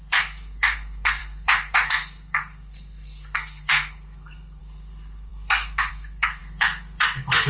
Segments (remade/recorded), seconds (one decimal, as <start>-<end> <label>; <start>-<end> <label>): 0.0-7.5 remade